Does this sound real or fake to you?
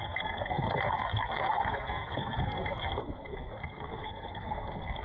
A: fake